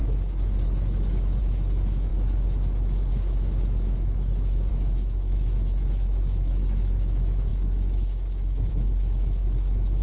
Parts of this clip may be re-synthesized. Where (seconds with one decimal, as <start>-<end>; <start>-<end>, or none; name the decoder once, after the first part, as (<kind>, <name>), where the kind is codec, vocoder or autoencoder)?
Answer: 0.0-10.0 (autoencoder, DAC-VAE)